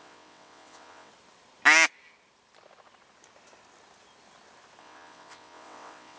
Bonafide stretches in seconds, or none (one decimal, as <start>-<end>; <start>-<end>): 1.1-4.8